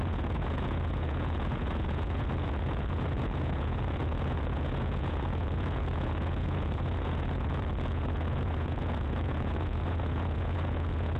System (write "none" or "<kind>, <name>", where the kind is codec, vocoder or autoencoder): vocoder, Vocos